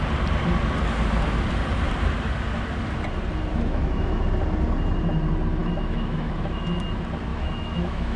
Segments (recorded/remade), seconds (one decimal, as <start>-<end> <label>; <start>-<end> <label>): 0.0-3.5 recorded; 3.5-4.2 remade; 4.2-5.6 recorded; 5.6-6.8 remade; 6.8-7.3 recorded; 7.3-8.2 remade